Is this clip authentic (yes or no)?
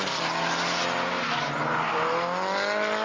yes